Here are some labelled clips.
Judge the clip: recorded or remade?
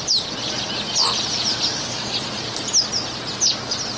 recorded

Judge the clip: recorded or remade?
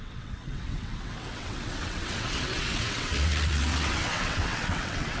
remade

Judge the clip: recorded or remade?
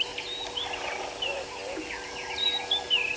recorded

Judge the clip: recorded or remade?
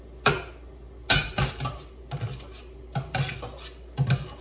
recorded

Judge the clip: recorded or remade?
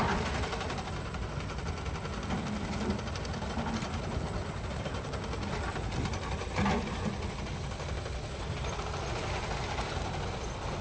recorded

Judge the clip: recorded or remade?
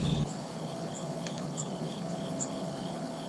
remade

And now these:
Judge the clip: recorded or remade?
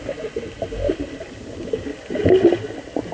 recorded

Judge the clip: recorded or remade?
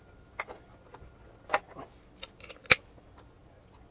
recorded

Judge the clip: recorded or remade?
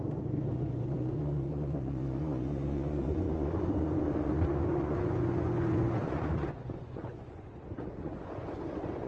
remade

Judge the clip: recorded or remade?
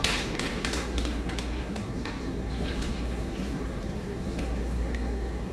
remade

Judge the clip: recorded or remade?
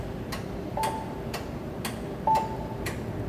recorded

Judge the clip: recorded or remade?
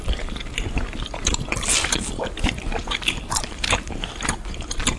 remade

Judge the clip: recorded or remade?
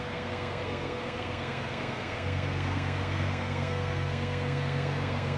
remade